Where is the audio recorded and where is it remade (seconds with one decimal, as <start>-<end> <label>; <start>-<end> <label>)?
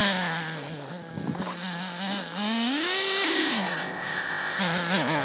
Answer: 0.0-3.3 recorded; 3.3-4.6 remade; 4.6-5.2 recorded